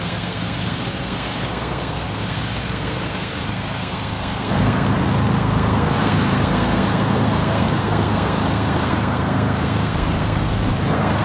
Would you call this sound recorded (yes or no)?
no